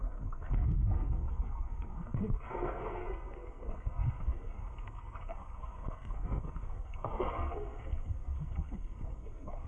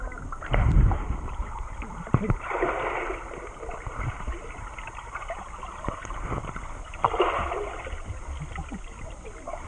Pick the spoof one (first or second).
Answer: first